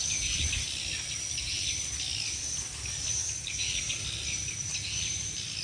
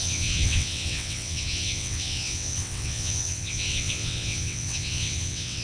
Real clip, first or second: first